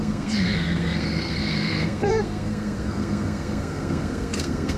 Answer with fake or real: fake